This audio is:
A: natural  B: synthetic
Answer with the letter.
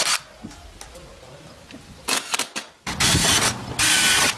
A